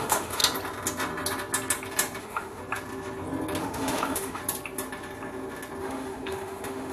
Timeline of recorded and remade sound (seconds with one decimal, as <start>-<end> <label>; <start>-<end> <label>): 0.0-0.4 remade; 0.4-2.2 recorded; 2.2-2.6 remade; 2.6-3.6 recorded; 3.6-4.4 remade; 4.4-5.8 recorded; 5.8-6.9 remade